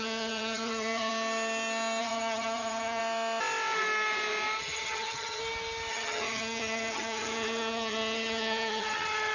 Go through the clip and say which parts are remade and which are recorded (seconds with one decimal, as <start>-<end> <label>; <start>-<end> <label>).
0.0-1.1 remade; 1.1-2.0 recorded; 2.0-3.0 remade; 3.0-4.6 recorded; 4.6-5.4 remade; 5.4-5.9 recorded; 5.9-9.3 remade